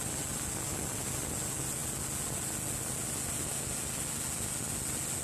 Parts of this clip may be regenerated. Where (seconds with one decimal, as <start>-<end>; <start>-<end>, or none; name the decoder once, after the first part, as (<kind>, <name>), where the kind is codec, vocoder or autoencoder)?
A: none